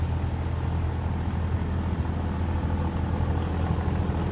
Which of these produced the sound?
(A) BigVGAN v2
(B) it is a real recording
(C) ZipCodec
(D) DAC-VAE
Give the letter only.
B